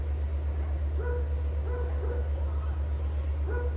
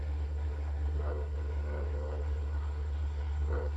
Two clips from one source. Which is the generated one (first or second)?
second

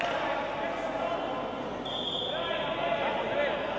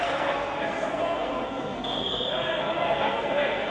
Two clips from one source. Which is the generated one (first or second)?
second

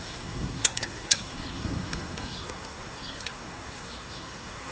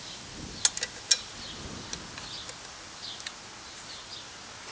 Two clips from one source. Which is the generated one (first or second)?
first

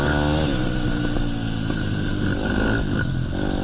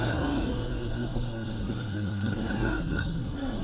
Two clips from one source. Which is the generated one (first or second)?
second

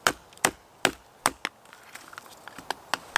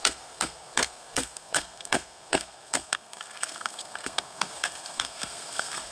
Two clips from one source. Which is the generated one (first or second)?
second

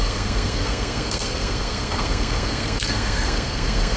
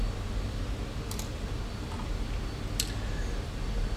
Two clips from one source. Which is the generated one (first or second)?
first